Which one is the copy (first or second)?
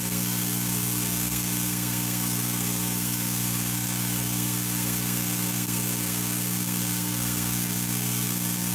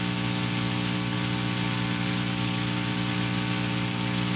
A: first